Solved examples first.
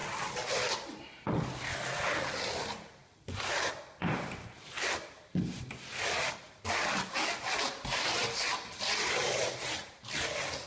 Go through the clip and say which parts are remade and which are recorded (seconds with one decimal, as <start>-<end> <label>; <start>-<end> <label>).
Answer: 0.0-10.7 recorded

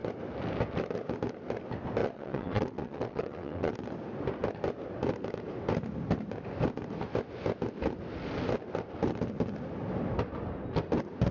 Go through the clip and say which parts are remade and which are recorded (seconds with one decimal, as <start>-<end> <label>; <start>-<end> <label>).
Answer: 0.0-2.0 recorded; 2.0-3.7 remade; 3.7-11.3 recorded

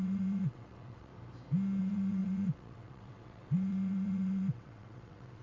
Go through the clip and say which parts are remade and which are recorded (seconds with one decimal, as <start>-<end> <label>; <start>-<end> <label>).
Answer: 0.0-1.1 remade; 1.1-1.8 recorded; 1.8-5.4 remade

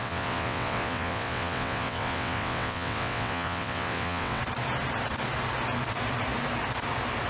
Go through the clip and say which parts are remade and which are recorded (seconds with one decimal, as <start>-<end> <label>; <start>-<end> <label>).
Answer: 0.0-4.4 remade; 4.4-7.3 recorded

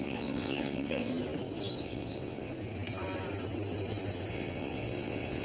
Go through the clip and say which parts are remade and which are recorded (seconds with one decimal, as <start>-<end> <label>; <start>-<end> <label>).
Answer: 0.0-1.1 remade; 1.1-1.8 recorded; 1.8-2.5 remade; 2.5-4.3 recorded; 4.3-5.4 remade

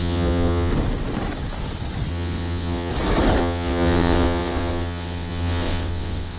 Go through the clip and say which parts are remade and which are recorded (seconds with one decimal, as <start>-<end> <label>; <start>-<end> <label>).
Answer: 0.0-0.7 remade; 0.7-2.1 recorded; 2.1-2.9 remade; 2.9-3.4 recorded; 3.4-6.4 remade